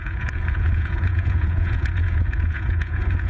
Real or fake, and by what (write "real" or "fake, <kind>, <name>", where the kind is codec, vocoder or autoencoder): fake, vocoder, Vocos